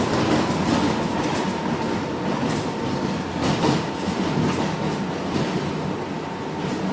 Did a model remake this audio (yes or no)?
no